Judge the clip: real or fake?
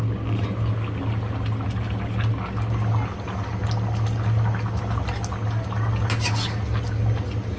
real